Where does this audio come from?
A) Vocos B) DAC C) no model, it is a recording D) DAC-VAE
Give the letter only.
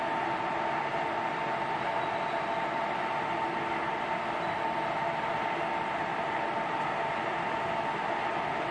C